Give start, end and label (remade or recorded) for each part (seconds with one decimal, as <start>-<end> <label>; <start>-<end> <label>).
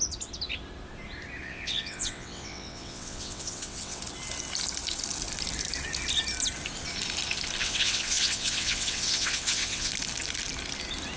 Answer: 0.0-1.4 recorded; 1.4-4.0 remade; 4.0-7.6 recorded; 7.6-9.9 remade; 9.9-11.2 recorded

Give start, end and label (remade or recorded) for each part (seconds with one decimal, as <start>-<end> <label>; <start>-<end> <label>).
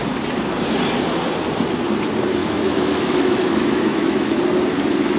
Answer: 0.0-2.4 recorded; 2.4-4.4 remade; 4.4-5.2 recorded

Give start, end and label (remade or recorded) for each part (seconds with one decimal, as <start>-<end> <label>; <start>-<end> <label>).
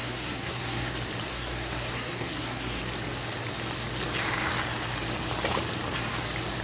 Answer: 0.0-0.9 remade; 0.9-1.3 recorded; 1.3-2.8 remade; 2.8-6.6 recorded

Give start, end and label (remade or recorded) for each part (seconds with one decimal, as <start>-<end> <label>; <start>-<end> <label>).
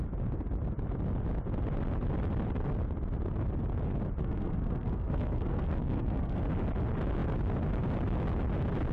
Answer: 0.0-4.2 recorded; 4.2-6.4 remade; 6.4-8.9 recorded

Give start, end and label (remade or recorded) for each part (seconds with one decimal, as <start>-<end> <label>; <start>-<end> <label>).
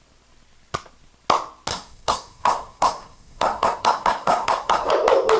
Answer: 0.0-1.7 recorded; 1.7-4.9 remade; 4.9-5.4 recorded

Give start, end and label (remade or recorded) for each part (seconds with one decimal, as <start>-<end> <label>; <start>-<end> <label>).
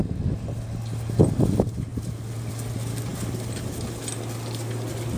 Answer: 0.0-5.2 recorded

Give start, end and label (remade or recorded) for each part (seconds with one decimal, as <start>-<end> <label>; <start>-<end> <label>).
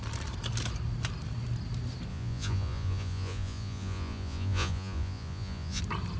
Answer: 0.0-2.1 recorded; 2.1-5.8 remade; 5.8-6.2 recorded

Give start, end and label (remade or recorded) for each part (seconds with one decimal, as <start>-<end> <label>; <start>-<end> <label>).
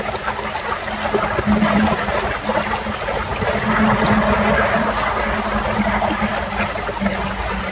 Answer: 0.0-7.7 recorded